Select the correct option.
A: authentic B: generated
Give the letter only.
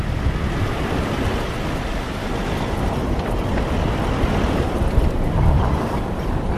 B